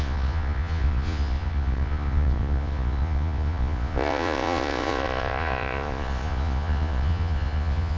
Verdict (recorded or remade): remade